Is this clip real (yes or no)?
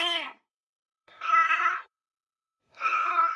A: no